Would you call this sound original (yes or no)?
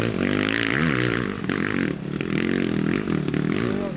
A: yes